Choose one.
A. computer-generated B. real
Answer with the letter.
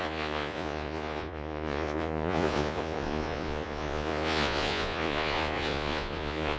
A